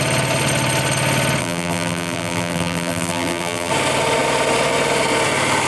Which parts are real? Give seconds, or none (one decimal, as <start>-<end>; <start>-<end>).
0.0-1.4; 3.7-5.7